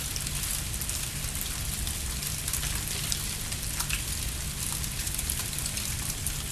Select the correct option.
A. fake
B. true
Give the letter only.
B